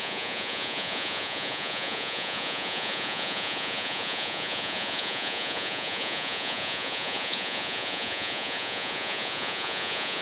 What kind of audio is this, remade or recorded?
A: remade